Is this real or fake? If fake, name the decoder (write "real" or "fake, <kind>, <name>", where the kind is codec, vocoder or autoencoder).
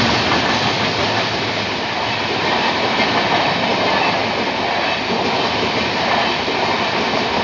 real